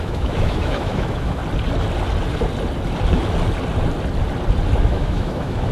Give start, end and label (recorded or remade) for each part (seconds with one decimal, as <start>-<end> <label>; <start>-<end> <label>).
0.0-1.4 remade; 1.4-4.8 recorded; 4.8-5.7 remade

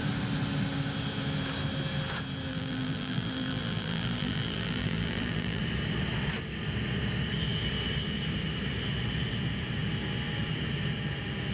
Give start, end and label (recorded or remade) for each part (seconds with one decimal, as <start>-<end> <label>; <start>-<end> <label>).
0.0-2.5 recorded; 2.5-5.6 remade; 5.6-11.5 recorded

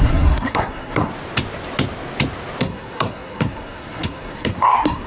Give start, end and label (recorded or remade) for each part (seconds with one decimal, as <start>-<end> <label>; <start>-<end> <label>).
0.0-1.1 remade; 1.1-2.6 recorded; 2.6-5.1 remade

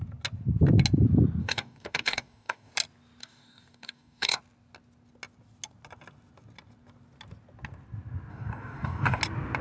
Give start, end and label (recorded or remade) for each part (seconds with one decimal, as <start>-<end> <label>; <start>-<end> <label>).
0.0-1.4 recorded; 1.4-2.7 remade; 2.7-3.2 recorded; 3.2-4.4 remade; 4.4-8.3 recorded; 8.3-9.2 remade; 9.2-9.6 recorded

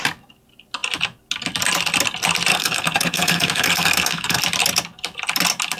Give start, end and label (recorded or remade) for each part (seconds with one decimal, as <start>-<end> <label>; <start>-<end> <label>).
0.0-2.5 recorded; 2.5-4.4 remade; 4.4-5.8 recorded

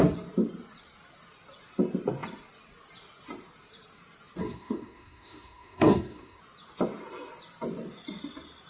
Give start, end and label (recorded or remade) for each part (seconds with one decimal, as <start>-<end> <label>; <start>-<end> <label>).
0.0-4.4 recorded; 4.4-6.4 remade; 6.4-8.7 recorded

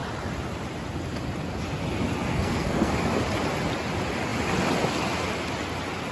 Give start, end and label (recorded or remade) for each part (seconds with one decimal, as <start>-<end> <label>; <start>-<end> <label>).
0.0-2.3 recorded; 2.3-2.9 remade; 2.9-6.1 recorded

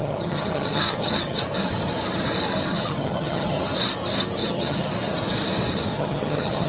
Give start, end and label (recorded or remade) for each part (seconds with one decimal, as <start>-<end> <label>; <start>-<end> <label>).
0.0-1.4 remade; 1.4-2.7 recorded; 2.7-3.6 remade; 3.6-4.4 recorded; 4.4-4.9 remade; 4.9-5.9 recorded; 5.9-6.7 remade